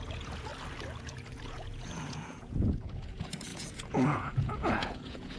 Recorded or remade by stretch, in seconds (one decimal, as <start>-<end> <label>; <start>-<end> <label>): 0.0-0.5 remade; 0.5-1.0 recorded; 1.0-5.4 remade